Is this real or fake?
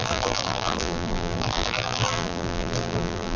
fake